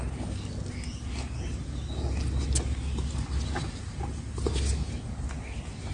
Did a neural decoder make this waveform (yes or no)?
no